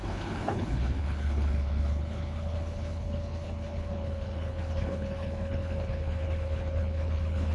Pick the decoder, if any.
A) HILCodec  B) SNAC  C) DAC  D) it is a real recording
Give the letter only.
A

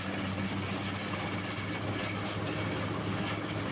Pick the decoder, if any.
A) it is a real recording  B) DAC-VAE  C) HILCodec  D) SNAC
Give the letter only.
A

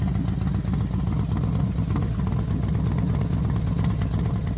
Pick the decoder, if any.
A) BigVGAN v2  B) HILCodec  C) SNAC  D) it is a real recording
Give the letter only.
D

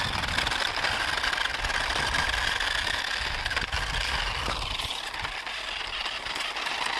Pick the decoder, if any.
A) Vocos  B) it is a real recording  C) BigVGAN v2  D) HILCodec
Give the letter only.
B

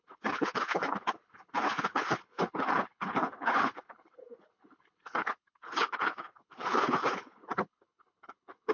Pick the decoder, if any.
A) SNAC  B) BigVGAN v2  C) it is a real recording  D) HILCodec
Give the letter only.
D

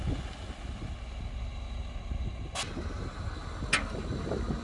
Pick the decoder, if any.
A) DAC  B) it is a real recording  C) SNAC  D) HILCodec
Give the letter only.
B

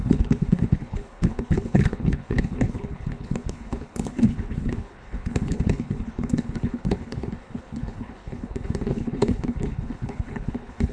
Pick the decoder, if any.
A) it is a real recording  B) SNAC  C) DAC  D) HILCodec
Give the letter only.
D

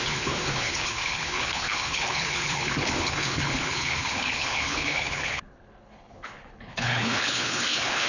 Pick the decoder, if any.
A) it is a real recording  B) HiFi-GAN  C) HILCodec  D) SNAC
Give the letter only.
C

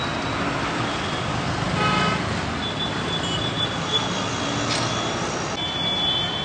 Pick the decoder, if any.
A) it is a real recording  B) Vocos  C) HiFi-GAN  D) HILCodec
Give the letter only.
A